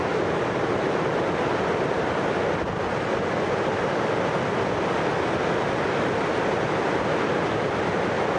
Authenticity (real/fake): real